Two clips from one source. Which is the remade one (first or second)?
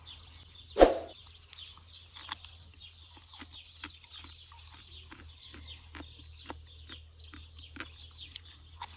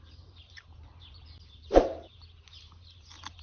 second